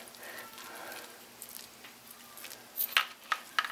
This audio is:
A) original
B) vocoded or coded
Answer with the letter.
A